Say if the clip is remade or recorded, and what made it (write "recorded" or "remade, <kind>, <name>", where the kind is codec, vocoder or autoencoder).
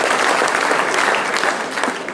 recorded